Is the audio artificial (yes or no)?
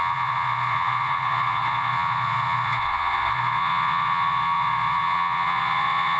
yes